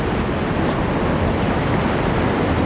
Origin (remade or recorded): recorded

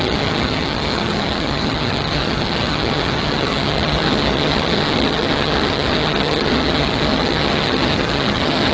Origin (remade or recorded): remade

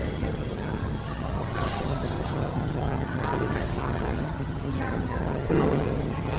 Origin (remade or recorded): remade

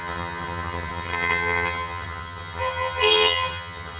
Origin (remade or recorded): remade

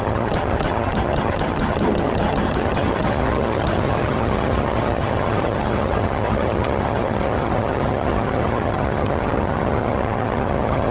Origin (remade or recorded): remade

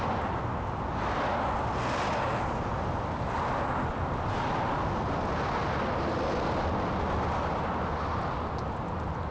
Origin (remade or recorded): recorded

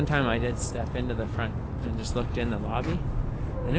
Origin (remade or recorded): recorded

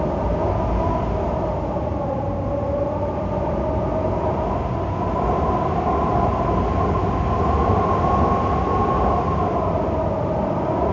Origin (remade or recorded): recorded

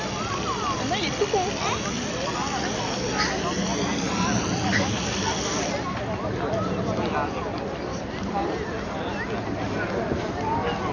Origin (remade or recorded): recorded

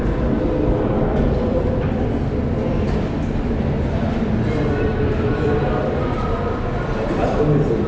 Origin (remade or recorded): recorded